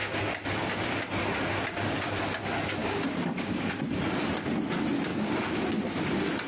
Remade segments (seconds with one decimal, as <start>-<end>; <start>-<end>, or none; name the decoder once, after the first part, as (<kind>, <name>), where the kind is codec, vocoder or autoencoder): 2.8-3.7 (codec, DAC); 5.1-5.6